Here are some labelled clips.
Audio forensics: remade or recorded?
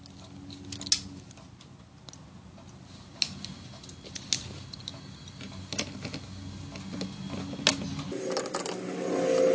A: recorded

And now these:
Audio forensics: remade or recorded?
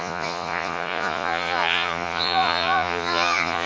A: remade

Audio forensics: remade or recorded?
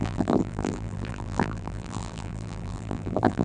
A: remade